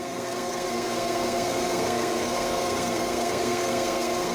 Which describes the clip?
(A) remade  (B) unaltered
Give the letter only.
A